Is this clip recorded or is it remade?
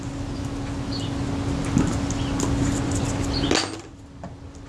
recorded